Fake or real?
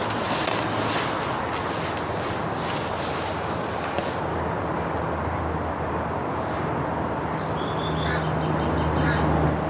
real